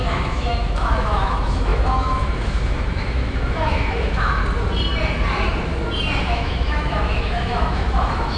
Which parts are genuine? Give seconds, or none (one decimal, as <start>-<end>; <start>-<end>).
4.4-6.2